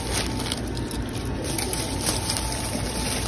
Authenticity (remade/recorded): recorded